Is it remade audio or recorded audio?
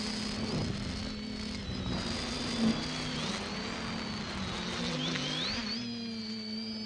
recorded